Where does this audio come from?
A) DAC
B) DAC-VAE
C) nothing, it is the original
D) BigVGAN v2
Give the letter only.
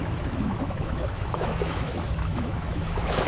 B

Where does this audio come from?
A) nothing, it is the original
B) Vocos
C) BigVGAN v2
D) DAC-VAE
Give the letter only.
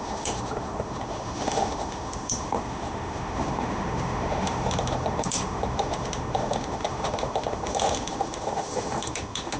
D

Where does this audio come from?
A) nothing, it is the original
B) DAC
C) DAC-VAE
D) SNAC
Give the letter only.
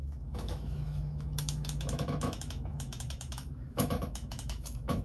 C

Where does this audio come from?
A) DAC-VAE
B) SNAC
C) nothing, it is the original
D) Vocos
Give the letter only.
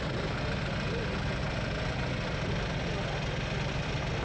C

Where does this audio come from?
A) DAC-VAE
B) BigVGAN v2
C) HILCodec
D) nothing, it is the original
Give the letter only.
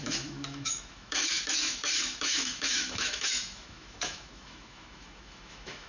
A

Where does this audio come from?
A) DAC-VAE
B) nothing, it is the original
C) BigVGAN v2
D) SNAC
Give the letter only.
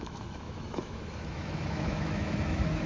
A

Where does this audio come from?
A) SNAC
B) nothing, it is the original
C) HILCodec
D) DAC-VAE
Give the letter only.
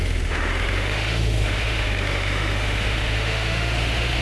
D